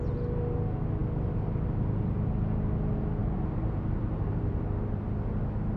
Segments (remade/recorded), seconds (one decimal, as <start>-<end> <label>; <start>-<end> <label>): 0.0-3.2 recorded; 3.2-4.6 remade; 4.6-5.8 recorded